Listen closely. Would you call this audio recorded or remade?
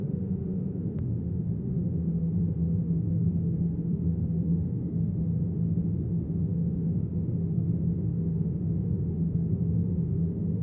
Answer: remade